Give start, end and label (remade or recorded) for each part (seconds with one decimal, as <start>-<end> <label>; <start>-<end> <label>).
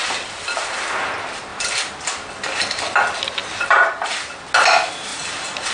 0.0-3.4 recorded; 3.4-4.1 remade; 4.1-5.1 recorded; 5.1-5.7 remade